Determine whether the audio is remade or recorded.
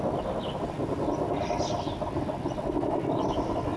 recorded